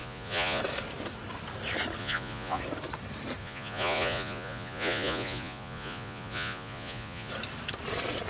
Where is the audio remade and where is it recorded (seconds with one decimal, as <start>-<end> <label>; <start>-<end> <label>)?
0.0-0.6 remade; 0.6-2.0 recorded; 2.0-2.6 remade; 2.6-3.4 recorded; 3.4-7.3 remade; 7.3-8.3 recorded